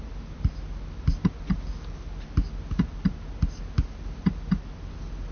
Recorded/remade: recorded